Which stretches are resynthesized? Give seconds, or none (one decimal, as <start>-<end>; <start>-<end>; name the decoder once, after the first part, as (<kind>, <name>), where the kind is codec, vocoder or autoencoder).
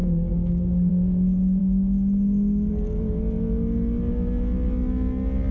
0.0-0.9 (codec, DAC)